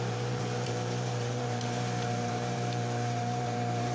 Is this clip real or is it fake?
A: fake